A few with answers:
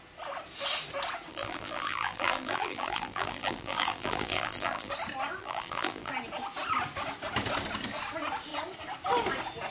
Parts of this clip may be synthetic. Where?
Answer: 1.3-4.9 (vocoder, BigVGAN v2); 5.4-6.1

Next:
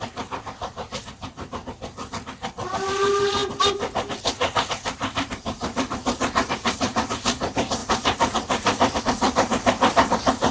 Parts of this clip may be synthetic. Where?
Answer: 7.8-9.0 (vocoder, BigVGAN v2)

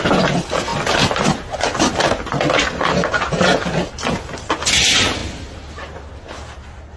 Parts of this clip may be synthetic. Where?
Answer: none

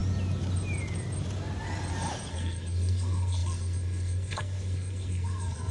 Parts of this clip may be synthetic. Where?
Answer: 2.3-5.7 (codec, SNAC)

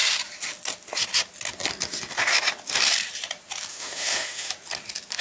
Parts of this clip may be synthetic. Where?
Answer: 3.7-4.5 (autoencoder, DAC-VAE)

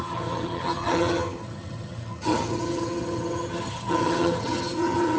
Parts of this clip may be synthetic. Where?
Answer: 0.0-5.2 (vocoder, HiFi-GAN)